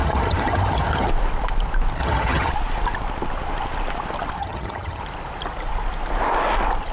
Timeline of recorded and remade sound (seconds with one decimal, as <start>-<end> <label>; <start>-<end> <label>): 0.0-1.1 remade; 1.1-2.0 recorded; 2.0-2.5 remade; 2.5-4.4 recorded; 4.4-5.0 remade; 5.0-6.9 recorded